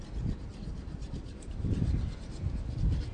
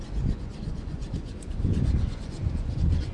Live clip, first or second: first